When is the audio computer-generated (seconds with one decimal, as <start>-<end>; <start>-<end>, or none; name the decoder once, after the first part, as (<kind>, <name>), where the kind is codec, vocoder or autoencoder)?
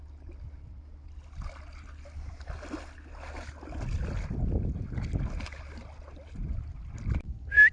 none